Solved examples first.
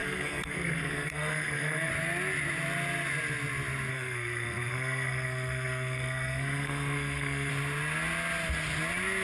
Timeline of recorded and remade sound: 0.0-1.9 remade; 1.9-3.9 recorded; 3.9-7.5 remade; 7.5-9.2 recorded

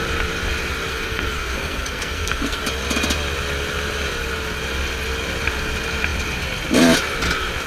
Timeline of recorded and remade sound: 0.0-0.9 recorded; 0.9-2.6 remade; 2.6-7.7 recorded

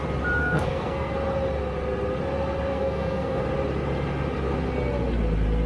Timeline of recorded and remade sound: 0.0-0.4 recorded; 0.4-1.1 remade; 1.1-2.7 recorded; 2.7-3.4 remade; 3.4-5.7 recorded

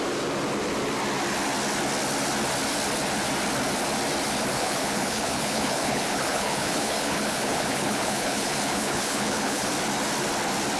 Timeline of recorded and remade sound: 0.0-4.5 recorded; 4.5-9.7 remade; 9.7-10.8 recorded

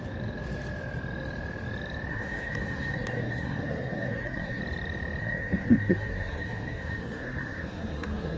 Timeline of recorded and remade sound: 0.0-2.1 recorded; 2.1-4.6 remade; 4.6-5.2 recorded; 5.2-8.4 remade